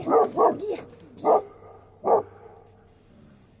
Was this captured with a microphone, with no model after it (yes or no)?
yes